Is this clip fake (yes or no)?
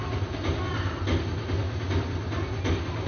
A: no